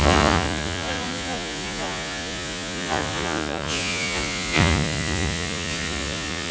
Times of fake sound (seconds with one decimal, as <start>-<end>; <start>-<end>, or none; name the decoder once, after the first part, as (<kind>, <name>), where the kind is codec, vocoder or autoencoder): 0.0-6.5 (vocoder, Vocos)